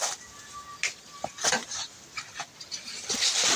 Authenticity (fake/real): real